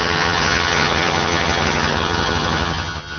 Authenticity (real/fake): fake